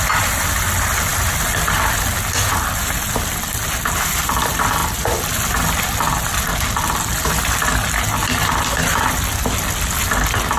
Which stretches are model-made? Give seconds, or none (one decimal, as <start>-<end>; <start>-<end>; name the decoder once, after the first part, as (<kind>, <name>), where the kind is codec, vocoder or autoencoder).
none